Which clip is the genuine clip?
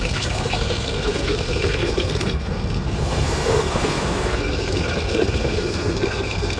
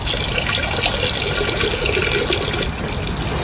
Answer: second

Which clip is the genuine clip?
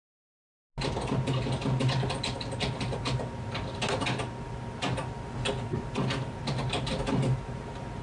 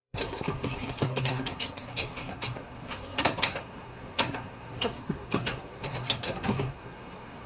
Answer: first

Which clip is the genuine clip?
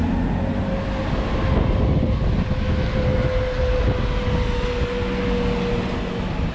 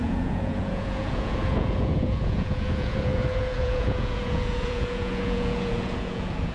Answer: first